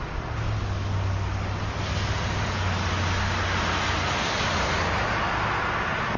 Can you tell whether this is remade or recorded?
recorded